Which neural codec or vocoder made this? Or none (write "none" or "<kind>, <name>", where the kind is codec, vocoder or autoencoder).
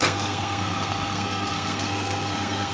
codec, SNAC